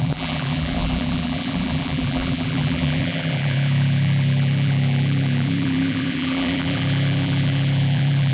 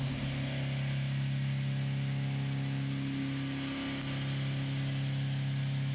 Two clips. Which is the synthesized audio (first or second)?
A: first